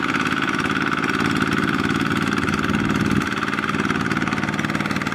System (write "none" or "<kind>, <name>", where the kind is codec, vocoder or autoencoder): none